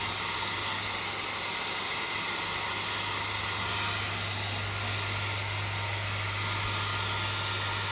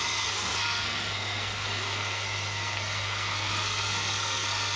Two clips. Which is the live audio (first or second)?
first